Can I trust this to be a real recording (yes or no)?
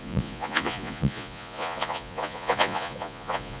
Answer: no